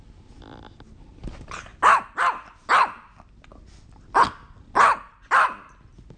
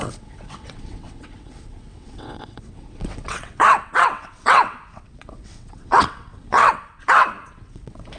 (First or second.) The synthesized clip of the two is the second